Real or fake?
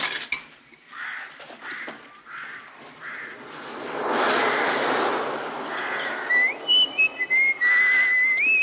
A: real